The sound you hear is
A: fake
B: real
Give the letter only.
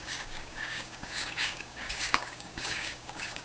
A